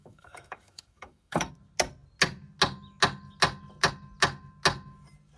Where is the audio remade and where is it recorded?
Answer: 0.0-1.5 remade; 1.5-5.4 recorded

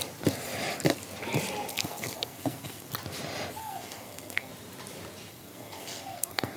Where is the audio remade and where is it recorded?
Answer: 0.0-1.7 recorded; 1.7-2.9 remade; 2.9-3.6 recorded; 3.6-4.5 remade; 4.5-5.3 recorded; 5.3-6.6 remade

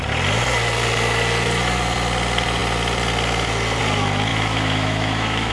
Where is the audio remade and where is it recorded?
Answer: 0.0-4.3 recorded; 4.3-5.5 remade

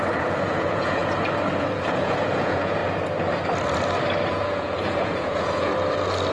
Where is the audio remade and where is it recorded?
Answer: 0.0-1.0 remade; 1.0-1.6 recorded; 1.6-2.8 remade; 2.8-4.3 recorded; 4.3-5.7 remade; 5.7-6.3 recorded

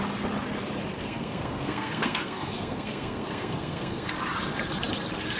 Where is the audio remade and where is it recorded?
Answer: 0.0-0.9 recorded; 0.9-4.1 remade; 4.1-5.4 recorded

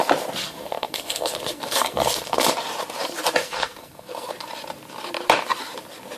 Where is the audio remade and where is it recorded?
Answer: 0.0-0.4 recorded; 0.4-2.5 remade; 2.5-3.4 recorded; 3.4-4.3 remade; 4.3-6.2 recorded

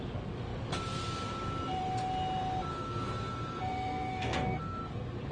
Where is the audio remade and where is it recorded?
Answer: 0.0-2.7 recorded; 2.7-4.8 remade; 4.8-5.3 recorded

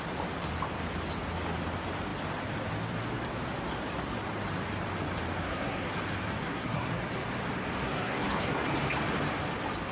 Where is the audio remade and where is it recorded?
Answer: 0.0-5.4 recorded; 5.4-5.9 remade; 5.9-6.4 recorded; 6.4-6.9 remade; 6.9-7.8 recorded; 7.8-8.7 remade; 8.7-9.9 recorded